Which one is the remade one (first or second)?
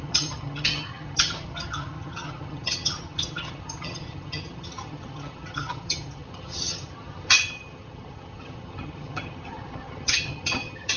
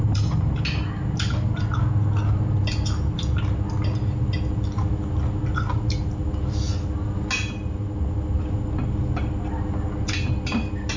first